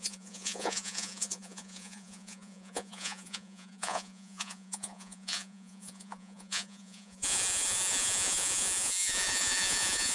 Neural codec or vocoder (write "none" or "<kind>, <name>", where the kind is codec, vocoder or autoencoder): vocoder, Vocos